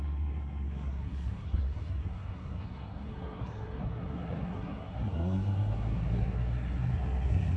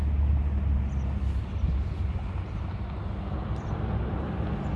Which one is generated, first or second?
first